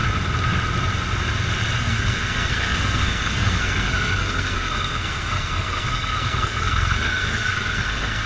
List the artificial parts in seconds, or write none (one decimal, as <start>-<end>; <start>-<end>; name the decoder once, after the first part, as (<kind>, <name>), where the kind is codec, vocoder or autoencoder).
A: 1.8-8.3 (codec, SNAC)